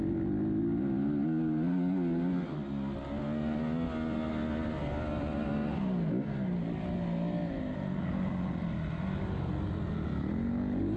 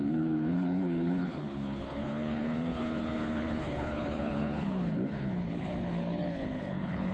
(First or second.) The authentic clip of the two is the first